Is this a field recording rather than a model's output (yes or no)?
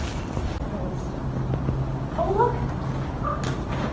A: yes